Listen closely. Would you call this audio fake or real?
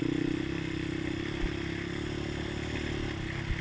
real